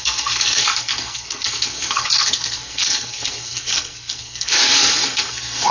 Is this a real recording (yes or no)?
no